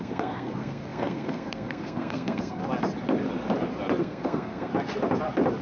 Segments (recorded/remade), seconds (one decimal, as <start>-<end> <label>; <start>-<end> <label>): 0.0-2.6 remade; 2.6-4.0 recorded; 4.0-4.7 remade; 4.7-5.6 recorded